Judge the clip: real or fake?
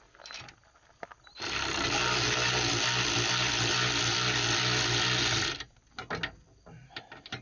real